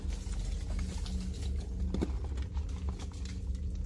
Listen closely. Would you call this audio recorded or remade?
recorded